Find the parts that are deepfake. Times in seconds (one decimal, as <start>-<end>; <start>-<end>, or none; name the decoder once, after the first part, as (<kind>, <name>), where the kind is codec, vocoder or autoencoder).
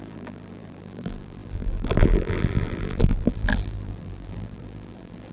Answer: 0.0-5.3 (vocoder, BigVGAN v2)